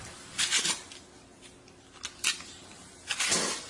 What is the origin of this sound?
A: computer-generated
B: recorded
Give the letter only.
B